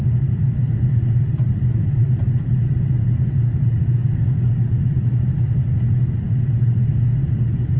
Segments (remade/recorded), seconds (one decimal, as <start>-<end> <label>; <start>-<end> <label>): 0.0-7.8 recorded

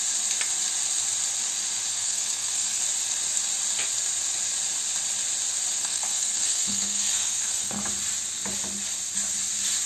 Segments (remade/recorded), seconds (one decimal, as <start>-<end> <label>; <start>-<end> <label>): 0.0-1.9 recorded; 1.9-2.8 remade; 2.8-5.8 recorded; 5.8-7.8 remade; 7.8-9.9 recorded

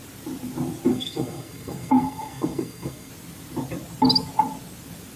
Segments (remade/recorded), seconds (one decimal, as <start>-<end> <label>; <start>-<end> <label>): 0.0-0.9 recorded; 0.9-3.1 remade; 3.1-5.2 recorded

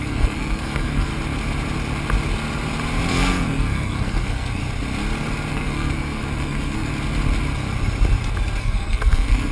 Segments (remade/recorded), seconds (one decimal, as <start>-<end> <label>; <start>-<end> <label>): 0.0-1.1 remade; 1.1-3.1 recorded; 3.1-4.6 remade; 4.6-5.5 recorded; 5.5-6.9 remade; 6.9-8.6 recorded; 8.6-9.5 remade

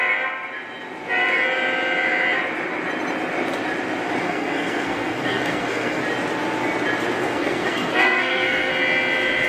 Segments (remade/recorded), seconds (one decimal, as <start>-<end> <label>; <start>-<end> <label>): 0.0-4.2 recorded; 4.2-6.0 remade; 6.0-7.2 recorded; 7.2-8.7 remade; 8.7-9.5 recorded